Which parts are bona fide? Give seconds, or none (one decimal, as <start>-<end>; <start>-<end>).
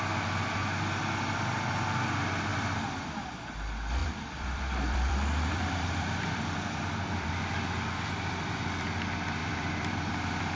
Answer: 0.0-2.5; 3.3-4.0; 7.3-9.4; 10.1-10.6